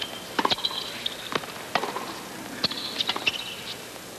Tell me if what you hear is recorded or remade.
recorded